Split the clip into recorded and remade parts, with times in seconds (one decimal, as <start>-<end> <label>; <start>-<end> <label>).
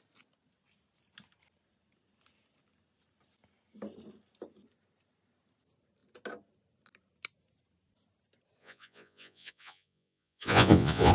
0.0-8.6 recorded; 8.6-11.1 remade